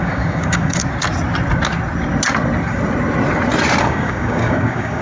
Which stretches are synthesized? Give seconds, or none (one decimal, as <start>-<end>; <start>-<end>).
0.0-0.8; 3.8-5.0